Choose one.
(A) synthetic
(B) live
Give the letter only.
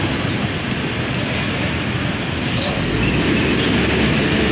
B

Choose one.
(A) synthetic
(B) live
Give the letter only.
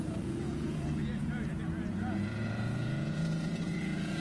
A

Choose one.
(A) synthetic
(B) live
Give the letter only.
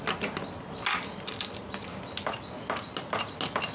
B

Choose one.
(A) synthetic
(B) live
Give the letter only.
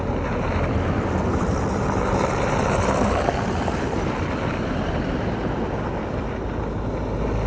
B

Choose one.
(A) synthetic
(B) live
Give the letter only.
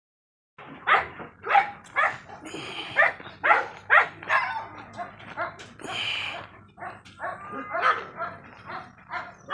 B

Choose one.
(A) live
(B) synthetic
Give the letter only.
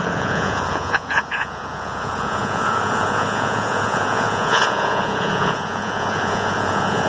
B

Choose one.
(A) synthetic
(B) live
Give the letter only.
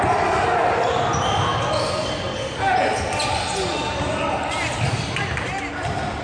B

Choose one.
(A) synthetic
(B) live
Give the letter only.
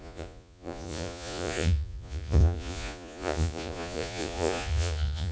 A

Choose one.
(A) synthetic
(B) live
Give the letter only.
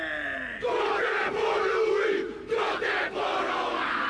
B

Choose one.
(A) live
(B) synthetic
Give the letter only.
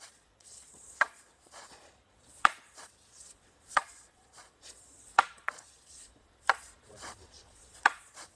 B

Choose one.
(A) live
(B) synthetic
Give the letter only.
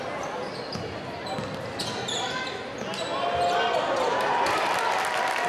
A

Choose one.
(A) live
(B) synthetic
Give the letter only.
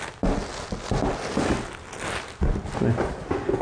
A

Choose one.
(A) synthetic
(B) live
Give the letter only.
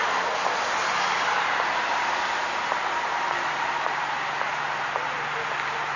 B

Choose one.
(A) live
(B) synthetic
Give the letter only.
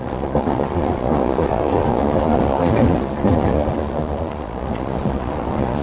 B